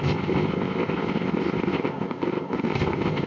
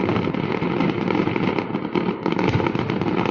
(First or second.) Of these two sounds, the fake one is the first